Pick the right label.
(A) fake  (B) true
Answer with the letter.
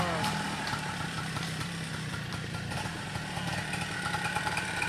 B